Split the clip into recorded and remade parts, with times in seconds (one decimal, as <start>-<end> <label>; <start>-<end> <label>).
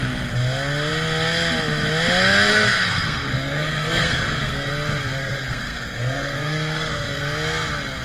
0.0-2.5 recorded; 2.5-4.7 remade; 4.7-5.2 recorded; 5.2-7.2 remade; 7.2-8.0 recorded